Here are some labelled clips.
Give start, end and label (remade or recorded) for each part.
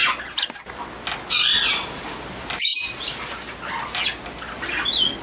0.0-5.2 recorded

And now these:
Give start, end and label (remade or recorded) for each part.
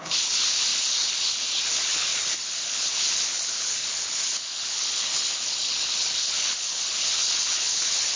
0.0-8.2 remade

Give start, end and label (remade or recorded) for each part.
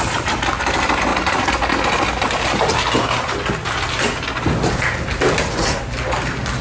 0.0-6.6 recorded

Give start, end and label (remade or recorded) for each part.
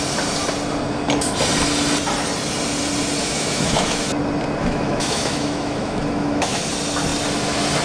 0.0-3.2 recorded; 3.2-4.1 remade; 4.1-4.6 recorded; 4.6-6.6 remade; 6.6-7.8 recorded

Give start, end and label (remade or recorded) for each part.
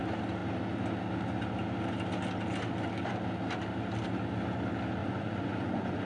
0.0-5.0 recorded; 5.0-6.1 remade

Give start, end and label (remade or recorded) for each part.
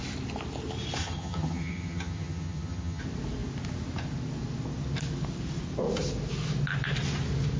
0.0-1.0 recorded; 1.0-3.0 remade; 3.0-7.6 recorded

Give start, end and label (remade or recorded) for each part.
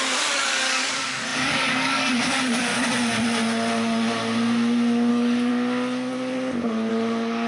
0.0-2.7 remade; 2.7-5.1 recorded; 5.1-5.5 remade; 5.5-6.9 recorded; 6.9-7.5 remade